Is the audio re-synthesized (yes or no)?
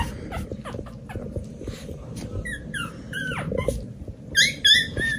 no